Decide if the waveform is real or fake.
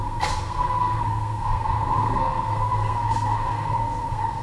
fake